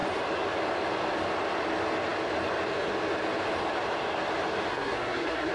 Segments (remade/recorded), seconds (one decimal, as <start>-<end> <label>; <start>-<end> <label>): 0.0-4.7 recorded; 4.7-5.5 remade